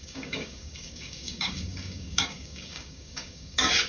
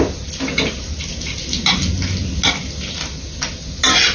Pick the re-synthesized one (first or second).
first